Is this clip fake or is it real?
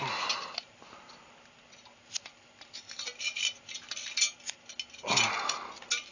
real